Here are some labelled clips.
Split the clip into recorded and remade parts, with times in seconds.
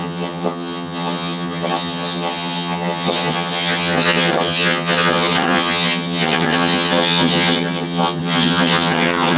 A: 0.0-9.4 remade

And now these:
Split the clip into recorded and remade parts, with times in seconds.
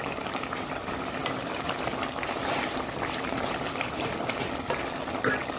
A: 0.0-5.6 recorded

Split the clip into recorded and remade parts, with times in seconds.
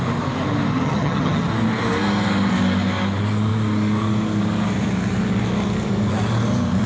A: 0.0-0.7 recorded; 0.7-1.5 remade; 1.5-6.9 recorded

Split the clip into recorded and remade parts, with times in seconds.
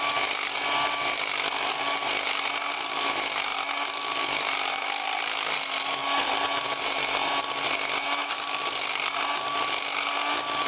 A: 0.0-10.7 recorded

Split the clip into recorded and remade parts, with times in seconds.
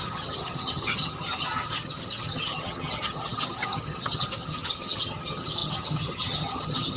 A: 0.0-7.0 remade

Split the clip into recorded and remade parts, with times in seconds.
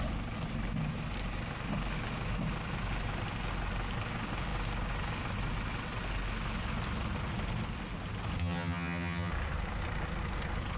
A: 0.0-8.4 recorded; 8.4-9.3 remade; 9.3-10.8 recorded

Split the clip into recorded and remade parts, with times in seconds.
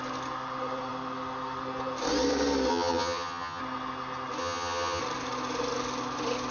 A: 0.0-2.7 recorded; 2.7-3.6 remade; 3.6-4.4 recorded; 4.4-5.0 remade; 5.0-6.5 recorded